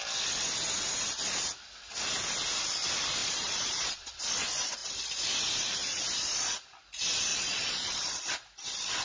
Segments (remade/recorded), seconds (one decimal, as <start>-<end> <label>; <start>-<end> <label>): 0.0-3.2 recorded; 3.2-4.2 remade; 4.2-7.3 recorded; 7.3-8.3 remade; 8.3-9.0 recorded